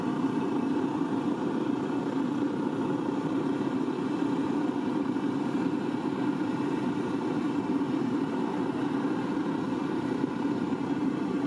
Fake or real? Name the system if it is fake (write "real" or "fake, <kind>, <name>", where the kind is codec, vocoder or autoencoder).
fake, vocoder, BigVGAN v2